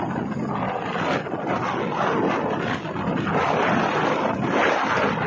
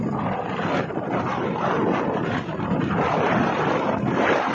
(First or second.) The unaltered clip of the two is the first